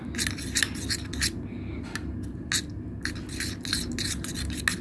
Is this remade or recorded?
recorded